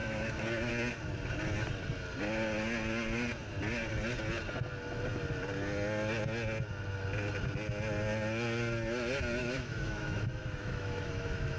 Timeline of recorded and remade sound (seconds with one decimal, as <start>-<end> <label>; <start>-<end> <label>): 0.0-0.7 remade; 0.7-9.4 recorded; 9.4-11.6 remade